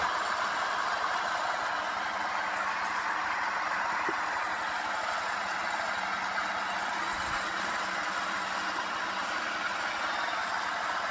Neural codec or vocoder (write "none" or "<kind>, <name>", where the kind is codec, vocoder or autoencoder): none